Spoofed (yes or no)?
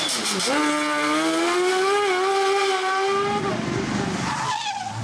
no